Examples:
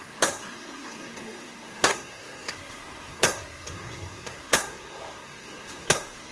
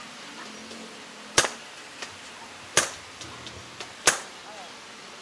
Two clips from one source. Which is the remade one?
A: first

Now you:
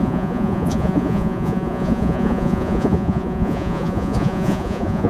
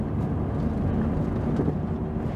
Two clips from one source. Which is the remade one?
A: first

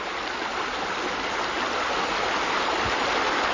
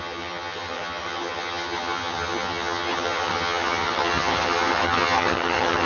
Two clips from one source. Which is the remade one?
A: second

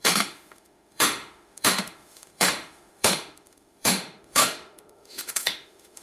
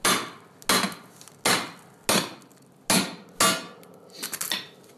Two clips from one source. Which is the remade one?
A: first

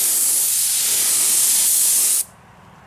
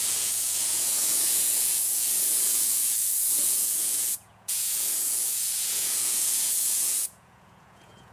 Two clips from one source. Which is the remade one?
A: second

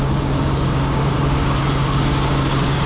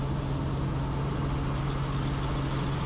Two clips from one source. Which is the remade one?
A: first